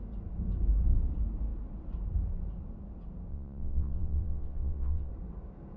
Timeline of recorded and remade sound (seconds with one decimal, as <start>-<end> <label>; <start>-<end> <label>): 0.0-3.3 recorded; 3.3-5.1 remade; 5.1-5.8 recorded